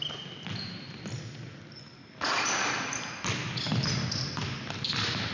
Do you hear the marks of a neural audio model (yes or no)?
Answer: yes